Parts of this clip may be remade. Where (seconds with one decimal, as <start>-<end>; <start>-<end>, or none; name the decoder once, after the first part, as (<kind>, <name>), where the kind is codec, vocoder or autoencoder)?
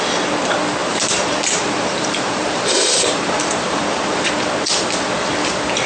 0.8-4.3 (vocoder, BigVGAN v2)